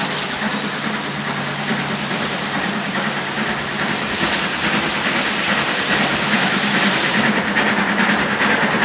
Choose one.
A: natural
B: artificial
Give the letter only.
A